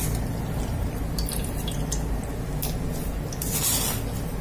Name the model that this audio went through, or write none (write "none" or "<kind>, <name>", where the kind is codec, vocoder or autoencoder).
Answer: none